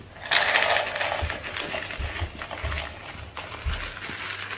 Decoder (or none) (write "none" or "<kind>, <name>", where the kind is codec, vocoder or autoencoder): none